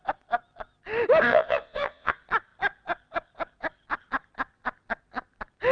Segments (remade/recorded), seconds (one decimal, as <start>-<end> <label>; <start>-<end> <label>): 0.0-1.3 recorded; 1.3-2.1 remade; 2.1-5.7 recorded